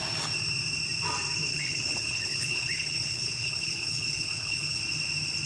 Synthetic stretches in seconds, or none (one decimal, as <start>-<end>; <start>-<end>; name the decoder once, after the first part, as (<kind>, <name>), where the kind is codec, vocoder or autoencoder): 1.5-4.8 (codec, HILCodec)